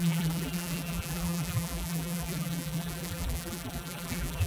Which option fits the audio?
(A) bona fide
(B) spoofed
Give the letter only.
B